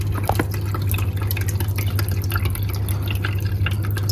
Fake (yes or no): no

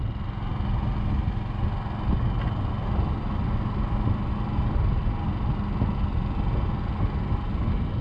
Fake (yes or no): no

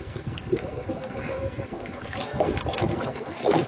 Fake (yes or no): yes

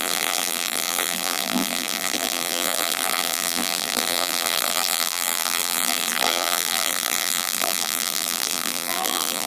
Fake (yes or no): yes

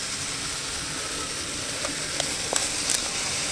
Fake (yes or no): no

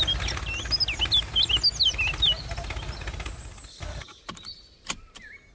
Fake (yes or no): no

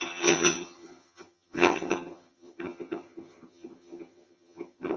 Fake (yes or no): yes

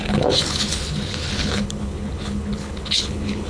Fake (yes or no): yes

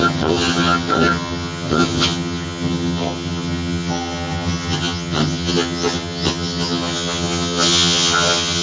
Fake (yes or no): yes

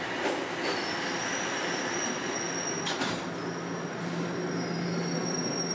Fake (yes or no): no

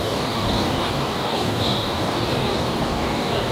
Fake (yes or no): yes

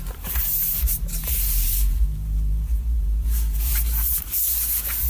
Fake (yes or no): yes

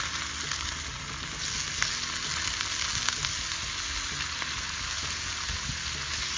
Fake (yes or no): no